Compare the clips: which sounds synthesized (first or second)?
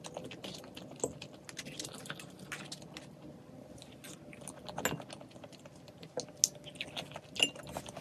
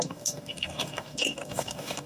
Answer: second